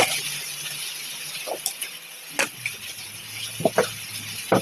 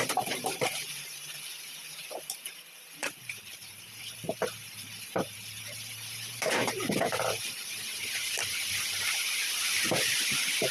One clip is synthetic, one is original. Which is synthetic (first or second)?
second